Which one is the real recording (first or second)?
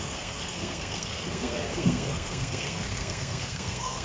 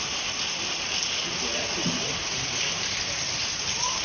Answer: second